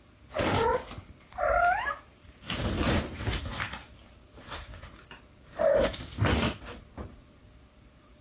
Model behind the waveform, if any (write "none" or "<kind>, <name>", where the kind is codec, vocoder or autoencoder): vocoder, BigVGAN v2